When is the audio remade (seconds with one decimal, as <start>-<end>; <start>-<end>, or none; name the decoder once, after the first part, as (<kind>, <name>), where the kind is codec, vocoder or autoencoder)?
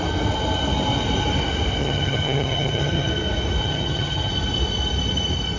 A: 1.8-3.1 (vocoder, HiFi-GAN); 3.6-4.3